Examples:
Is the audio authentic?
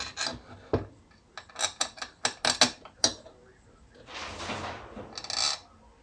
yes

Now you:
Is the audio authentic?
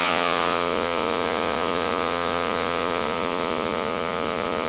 no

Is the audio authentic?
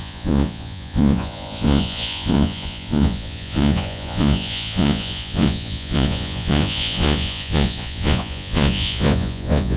no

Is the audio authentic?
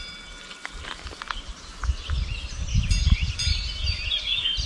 yes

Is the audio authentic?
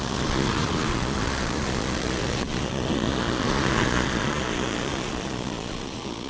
no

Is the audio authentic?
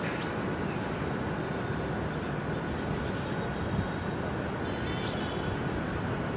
yes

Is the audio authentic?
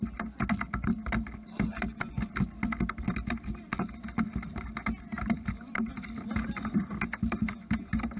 yes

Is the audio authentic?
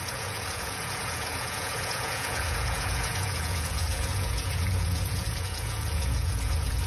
no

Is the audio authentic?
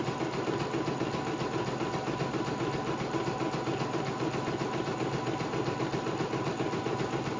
yes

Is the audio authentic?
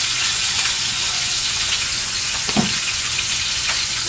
no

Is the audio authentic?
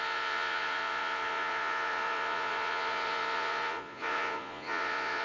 no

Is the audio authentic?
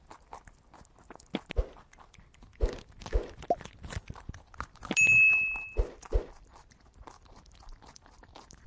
yes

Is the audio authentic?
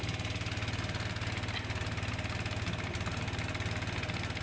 yes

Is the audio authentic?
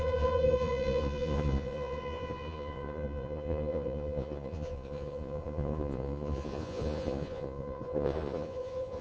no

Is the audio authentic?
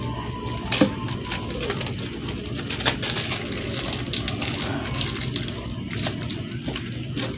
yes